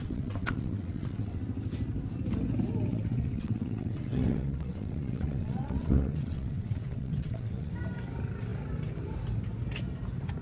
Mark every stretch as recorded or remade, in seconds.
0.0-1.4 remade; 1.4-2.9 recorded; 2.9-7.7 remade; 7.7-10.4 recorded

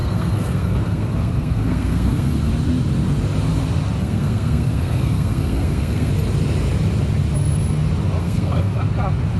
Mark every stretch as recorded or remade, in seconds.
0.0-2.5 remade; 2.5-4.0 recorded; 4.0-6.1 remade; 6.1-8.2 recorded; 8.2-8.8 remade; 8.8-9.4 recorded

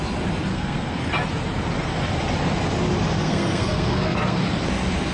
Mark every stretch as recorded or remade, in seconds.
0.0-0.5 recorded; 0.5-1.0 remade; 1.0-3.2 recorded; 3.2-4.4 remade; 4.4-5.1 recorded

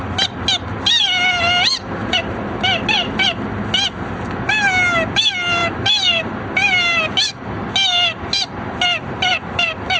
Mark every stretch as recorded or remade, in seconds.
0.0-10.0 recorded

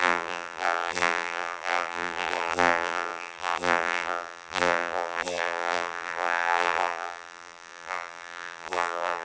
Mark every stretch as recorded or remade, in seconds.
0.0-9.2 remade

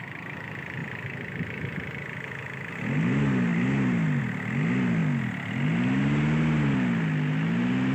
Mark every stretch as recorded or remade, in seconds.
0.0-7.9 recorded

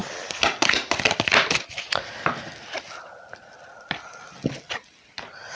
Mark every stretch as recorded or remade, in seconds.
0.0-3.0 recorded; 3.0-5.5 remade

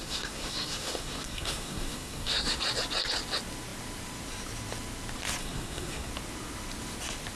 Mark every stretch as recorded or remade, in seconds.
0.0-2.6 remade; 2.6-5.4 recorded; 5.4-6.1 remade; 6.1-7.4 recorded